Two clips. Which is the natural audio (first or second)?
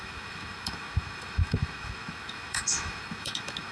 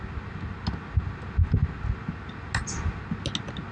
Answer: second